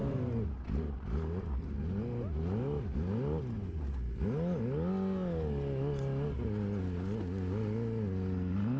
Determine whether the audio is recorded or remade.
recorded